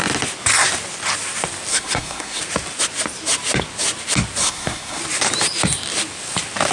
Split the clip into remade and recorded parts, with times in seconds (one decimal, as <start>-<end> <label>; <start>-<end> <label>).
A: 0.0-1.7 recorded; 1.7-2.4 remade; 2.4-4.4 recorded; 4.4-5.0 remade; 5.0-6.7 recorded